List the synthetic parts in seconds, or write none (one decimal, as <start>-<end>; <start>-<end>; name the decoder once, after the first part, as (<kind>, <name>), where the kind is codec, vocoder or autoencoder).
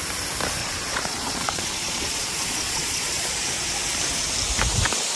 0.6-3.3 (vocoder, Vocos)